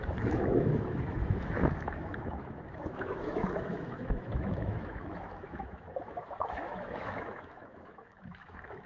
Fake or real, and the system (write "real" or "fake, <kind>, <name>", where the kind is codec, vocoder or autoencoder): fake, autoencoder, DAC-VAE